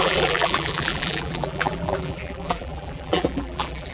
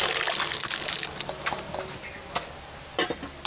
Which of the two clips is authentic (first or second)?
second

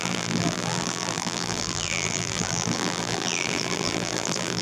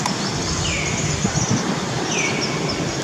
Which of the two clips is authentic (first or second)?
second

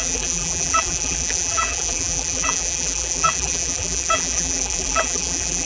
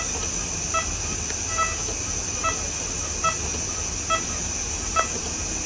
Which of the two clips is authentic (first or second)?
second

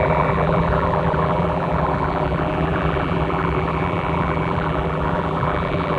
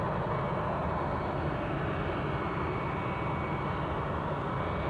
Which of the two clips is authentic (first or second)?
second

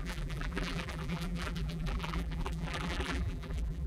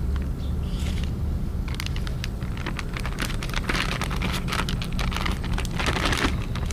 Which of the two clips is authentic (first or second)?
second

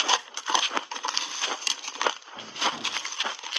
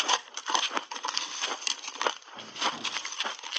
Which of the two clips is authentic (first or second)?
first